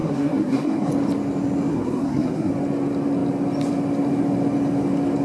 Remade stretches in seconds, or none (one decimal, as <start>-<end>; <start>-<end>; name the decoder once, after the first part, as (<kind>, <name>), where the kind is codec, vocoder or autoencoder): 0.0-0.9 (codec, SNAC); 1.7-2.5